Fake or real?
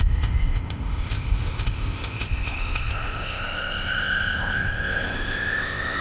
fake